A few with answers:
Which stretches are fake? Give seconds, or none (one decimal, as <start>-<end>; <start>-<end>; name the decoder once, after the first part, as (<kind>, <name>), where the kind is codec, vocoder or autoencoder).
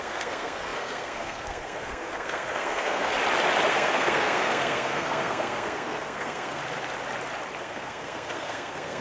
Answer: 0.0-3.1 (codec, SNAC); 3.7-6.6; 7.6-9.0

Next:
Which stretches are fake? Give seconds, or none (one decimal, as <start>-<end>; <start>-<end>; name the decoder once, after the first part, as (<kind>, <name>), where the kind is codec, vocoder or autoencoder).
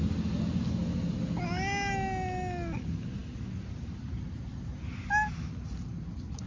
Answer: 3.2-4.0 (vocoder, BigVGAN v2)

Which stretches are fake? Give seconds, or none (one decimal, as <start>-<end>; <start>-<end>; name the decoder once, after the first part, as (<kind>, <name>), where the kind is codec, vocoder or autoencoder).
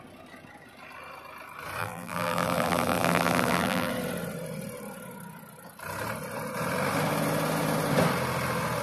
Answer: 1.8-3.9 (vocoder, BigVGAN v2)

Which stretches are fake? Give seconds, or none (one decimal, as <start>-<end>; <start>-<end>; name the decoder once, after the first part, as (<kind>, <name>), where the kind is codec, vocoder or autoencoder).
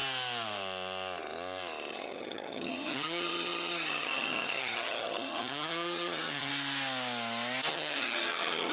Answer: 1.9-6.5 (vocoder, HiFi-GAN); 7.7-8.7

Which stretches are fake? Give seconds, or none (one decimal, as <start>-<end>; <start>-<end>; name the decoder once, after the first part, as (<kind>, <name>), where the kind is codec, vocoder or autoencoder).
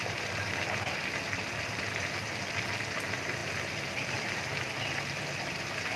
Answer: none